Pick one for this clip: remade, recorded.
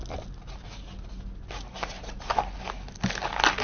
recorded